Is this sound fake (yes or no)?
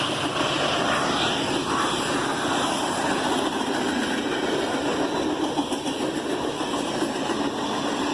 no